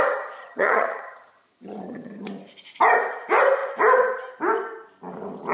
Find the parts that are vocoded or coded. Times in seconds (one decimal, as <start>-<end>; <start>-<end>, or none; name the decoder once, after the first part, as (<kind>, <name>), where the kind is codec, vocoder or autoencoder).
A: 0.4-2.3 (vocoder, HiFi-GAN)